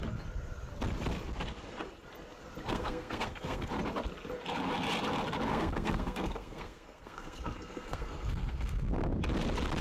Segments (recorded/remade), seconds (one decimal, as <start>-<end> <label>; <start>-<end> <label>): 0.0-2.7 recorded; 2.7-3.7 remade; 3.7-5.5 recorded; 5.5-8.9 remade; 8.9-9.8 recorded